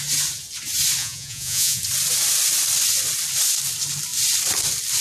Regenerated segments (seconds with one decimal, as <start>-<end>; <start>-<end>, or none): 1.0-1.8